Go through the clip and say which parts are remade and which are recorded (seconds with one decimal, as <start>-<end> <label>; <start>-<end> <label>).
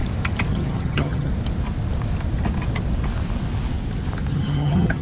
0.0-0.5 recorded; 0.5-1.3 remade; 1.3-4.3 recorded; 4.3-5.0 remade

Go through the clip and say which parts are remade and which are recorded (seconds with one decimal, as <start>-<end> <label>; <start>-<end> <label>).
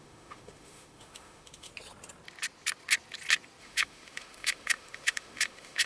0.0-1.7 remade; 1.7-3.6 recorded; 3.6-5.9 remade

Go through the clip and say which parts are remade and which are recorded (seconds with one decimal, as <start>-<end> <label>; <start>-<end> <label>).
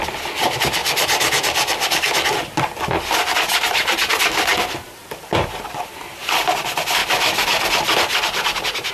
0.0-7.0 recorded; 7.0-7.6 remade; 7.6-8.9 recorded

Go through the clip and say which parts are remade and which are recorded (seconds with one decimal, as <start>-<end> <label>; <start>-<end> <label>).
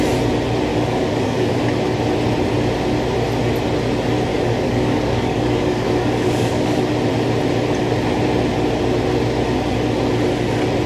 0.0-0.7 recorded; 0.7-1.6 remade; 1.6-4.3 recorded; 4.3-6.8 remade; 6.8-10.9 recorded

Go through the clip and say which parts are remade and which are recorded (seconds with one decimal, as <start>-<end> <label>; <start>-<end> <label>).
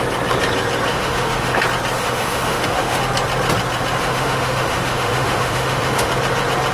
0.0-0.9 recorded; 0.9-1.6 remade; 1.6-2.0 recorded; 2.0-3.0 remade; 3.0-4.0 recorded; 4.0-6.1 remade; 6.1-6.7 recorded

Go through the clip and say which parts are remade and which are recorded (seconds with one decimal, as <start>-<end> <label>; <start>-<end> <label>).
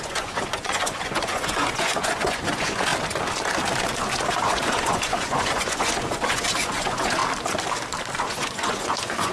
0.0-2.9 remade; 2.9-4.3 recorded; 4.3-7.2 remade; 7.2-8.2 recorded; 8.2-9.3 remade